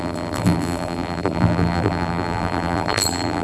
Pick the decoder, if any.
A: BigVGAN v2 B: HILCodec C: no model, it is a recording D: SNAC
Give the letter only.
A